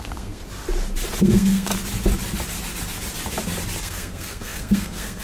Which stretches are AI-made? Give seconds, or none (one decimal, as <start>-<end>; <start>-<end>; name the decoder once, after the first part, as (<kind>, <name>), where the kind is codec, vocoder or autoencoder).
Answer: 0.0-0.4 (codec, SNAC); 1.2-1.7; 3.8-5.2